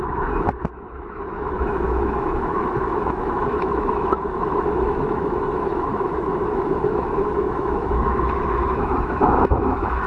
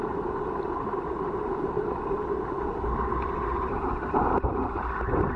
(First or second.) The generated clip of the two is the first